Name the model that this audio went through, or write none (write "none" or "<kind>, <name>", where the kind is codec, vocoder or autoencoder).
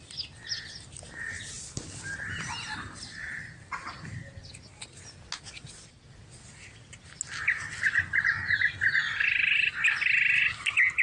none